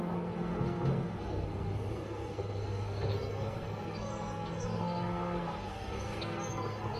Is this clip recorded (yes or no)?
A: no